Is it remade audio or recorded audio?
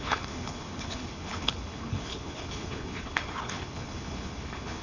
remade